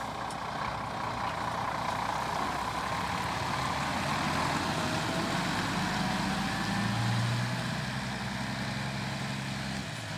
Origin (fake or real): real